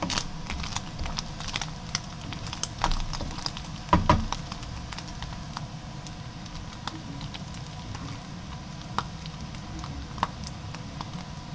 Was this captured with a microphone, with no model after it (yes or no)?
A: yes